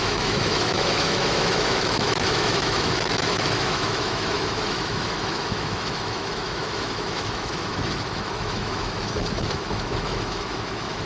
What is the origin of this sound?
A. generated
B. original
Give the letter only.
A